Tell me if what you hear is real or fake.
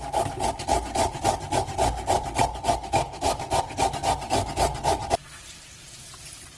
real